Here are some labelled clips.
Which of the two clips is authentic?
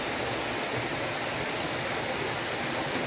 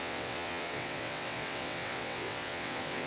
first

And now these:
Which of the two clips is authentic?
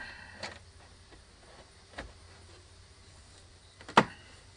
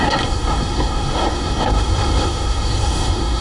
first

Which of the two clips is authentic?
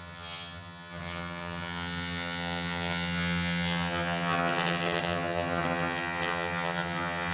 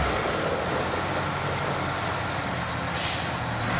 second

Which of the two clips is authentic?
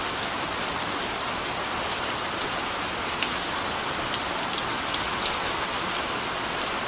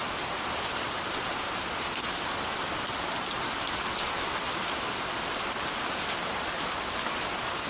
first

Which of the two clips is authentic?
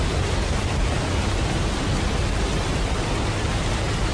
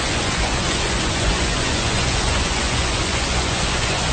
first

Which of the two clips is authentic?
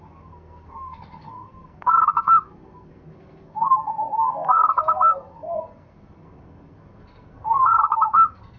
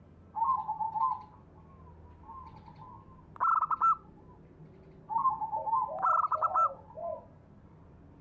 second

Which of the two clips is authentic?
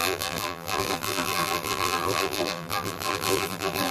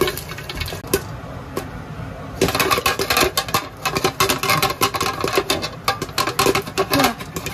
second